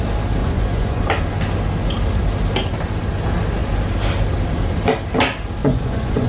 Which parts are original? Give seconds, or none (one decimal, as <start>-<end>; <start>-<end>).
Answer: 0.0-0.4; 1.0-5.6